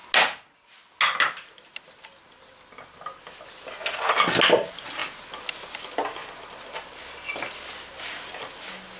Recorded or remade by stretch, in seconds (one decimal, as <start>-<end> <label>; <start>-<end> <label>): 0.0-9.0 recorded